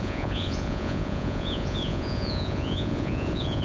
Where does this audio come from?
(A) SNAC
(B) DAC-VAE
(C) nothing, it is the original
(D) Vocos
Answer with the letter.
D